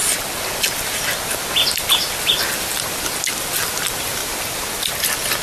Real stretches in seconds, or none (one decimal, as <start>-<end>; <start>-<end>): 0.0-4.2; 4.9-5.4